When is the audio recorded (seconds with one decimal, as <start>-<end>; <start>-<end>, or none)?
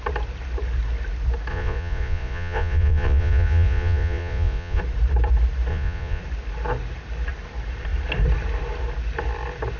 0.0-1.5; 4.8-5.7; 6.2-9.8